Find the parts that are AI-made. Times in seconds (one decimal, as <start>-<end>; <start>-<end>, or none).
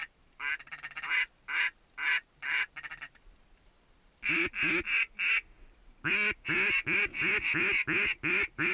0.0-0.7